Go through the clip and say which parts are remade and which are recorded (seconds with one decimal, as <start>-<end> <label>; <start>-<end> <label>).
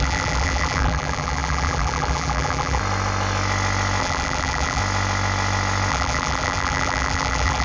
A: 0.0-2.8 remade; 2.8-4.0 recorded; 4.0-4.8 remade; 4.8-5.9 recorded; 5.9-7.6 remade